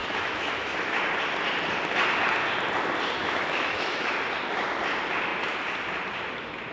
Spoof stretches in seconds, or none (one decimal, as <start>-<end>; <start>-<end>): 0.0-1.0; 3.2-4.1